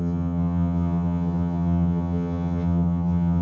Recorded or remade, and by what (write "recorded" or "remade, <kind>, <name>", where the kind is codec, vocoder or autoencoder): remade, vocoder, HiFi-GAN